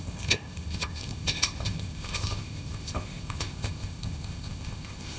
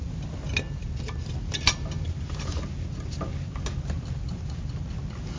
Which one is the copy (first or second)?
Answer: first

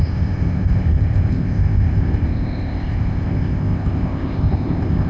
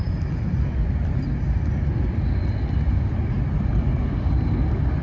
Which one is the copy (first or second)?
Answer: first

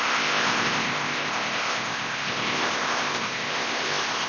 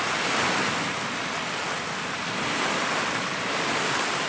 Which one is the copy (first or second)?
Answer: first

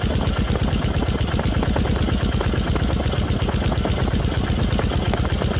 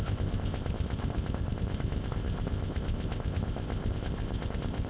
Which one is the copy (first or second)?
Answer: second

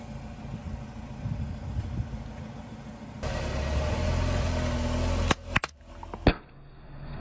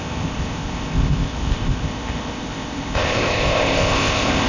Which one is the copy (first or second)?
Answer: second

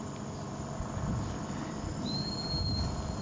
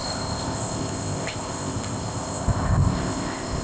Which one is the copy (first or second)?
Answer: second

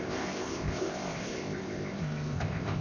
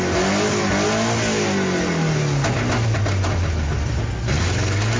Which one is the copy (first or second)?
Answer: first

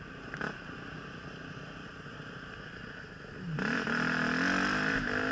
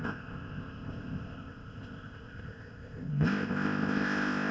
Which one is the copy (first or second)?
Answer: second